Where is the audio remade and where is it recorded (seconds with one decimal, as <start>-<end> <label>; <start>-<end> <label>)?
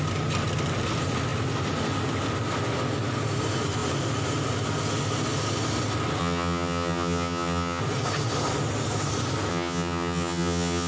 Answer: 0.0-6.2 recorded; 6.2-7.8 remade; 7.8-9.5 recorded; 9.5-10.9 remade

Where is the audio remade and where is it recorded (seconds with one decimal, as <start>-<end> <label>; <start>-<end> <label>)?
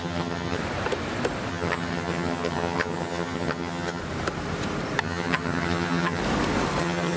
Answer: 0.0-0.6 remade; 0.6-1.5 recorded; 1.5-4.0 remade; 4.0-5.0 recorded; 5.0-6.2 remade; 6.2-6.8 recorded; 6.8-7.2 remade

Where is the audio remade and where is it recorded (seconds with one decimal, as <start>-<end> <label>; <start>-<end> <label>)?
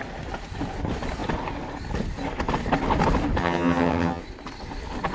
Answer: 0.0-3.4 recorded; 3.4-4.2 remade; 4.2-5.1 recorded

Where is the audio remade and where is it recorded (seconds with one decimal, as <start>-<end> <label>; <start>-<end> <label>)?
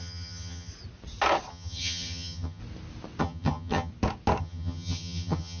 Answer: 0.0-0.7 remade; 0.7-1.5 recorded; 1.5-2.6 remade; 2.6-3.2 recorded; 3.2-3.9 remade; 3.9-4.4 recorded; 4.4-5.6 remade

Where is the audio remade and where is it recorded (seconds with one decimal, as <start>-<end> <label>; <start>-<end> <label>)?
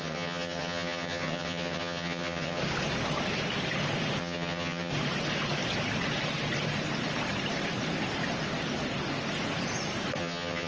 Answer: 0.0-2.6 remade; 2.6-4.2 recorded; 4.2-4.9 remade; 4.9-10.2 recorded; 10.2-10.7 remade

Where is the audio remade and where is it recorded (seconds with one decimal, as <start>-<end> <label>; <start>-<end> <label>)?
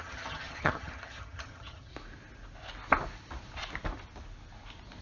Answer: 0.0-1.9 remade; 1.9-5.0 recorded